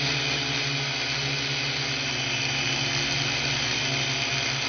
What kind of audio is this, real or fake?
real